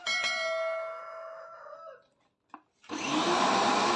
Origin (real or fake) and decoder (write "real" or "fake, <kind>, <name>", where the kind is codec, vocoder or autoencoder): real